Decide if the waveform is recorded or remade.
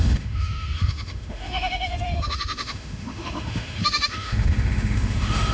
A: remade